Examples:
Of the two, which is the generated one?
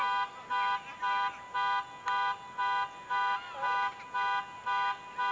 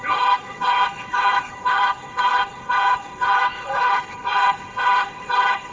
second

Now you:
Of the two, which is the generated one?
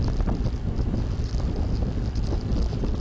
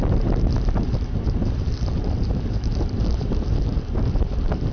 second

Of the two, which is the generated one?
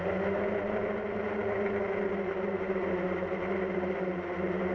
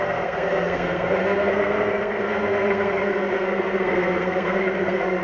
second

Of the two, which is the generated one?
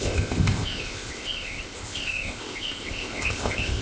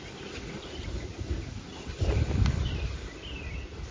first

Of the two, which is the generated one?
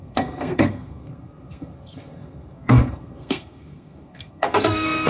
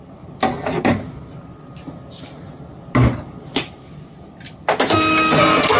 first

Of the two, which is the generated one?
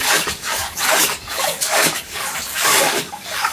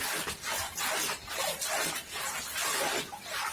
first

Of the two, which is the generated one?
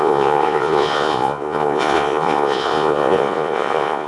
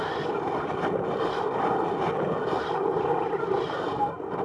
first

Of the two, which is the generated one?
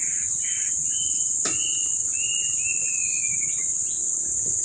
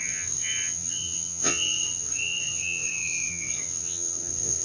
second